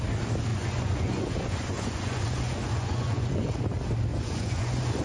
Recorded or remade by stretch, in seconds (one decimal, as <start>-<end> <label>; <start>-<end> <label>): 0.0-0.5 recorded; 0.5-3.5 remade; 3.5-4.1 recorded; 4.1-5.0 remade